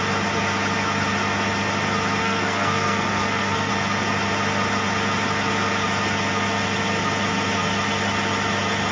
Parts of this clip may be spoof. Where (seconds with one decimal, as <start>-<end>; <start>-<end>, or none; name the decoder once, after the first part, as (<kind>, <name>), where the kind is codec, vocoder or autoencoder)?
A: 2.2-3.7 (codec, SNAC)